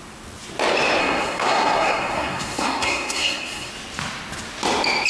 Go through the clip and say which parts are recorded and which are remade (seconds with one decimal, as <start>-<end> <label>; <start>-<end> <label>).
0.0-1.0 recorded; 1.0-3.7 remade; 3.7-5.1 recorded